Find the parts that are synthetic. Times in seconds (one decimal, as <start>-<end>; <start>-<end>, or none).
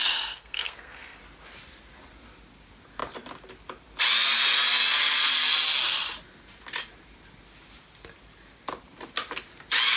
0.0-1.2